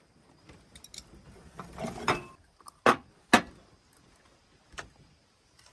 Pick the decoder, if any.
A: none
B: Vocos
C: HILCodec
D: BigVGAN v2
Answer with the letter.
A